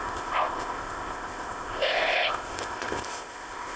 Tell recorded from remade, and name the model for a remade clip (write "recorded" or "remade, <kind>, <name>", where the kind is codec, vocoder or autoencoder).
remade, codec, ZipCodec